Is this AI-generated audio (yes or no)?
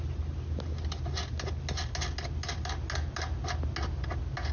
no